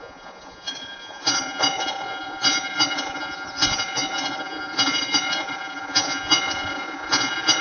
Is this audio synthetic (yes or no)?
yes